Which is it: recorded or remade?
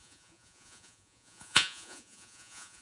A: remade